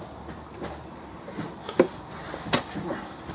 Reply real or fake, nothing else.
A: real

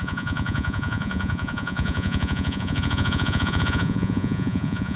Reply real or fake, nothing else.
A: fake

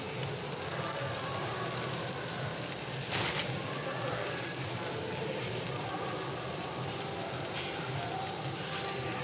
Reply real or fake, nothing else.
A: real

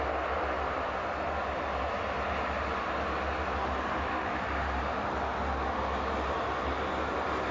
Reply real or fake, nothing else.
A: real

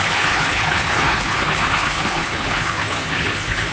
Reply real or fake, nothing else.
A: fake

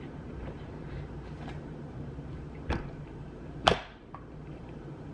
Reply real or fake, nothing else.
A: fake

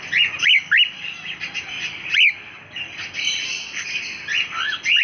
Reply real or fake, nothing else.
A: real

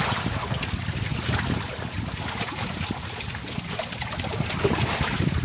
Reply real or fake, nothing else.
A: real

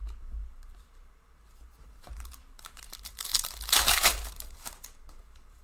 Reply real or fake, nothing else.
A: fake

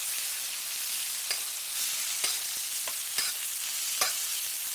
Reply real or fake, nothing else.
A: real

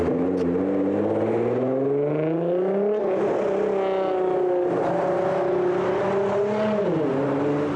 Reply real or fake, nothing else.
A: real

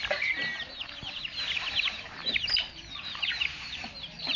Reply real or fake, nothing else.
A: real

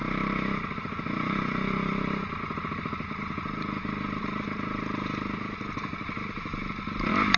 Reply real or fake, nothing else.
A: real